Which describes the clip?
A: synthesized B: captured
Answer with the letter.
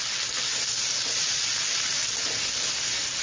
B